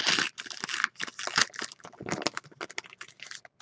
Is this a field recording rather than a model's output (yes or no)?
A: yes